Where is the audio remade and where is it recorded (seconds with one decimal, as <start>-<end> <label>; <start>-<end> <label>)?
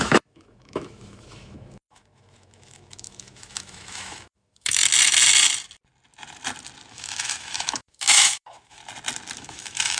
0.0-4.8 remade; 4.8-6.9 recorded; 6.9-8.8 remade; 8.8-9.4 recorded; 9.4-10.0 remade